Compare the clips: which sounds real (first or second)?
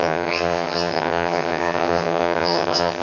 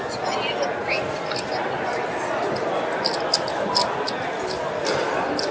second